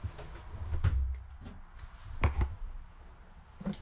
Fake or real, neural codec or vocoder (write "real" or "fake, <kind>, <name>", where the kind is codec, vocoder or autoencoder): real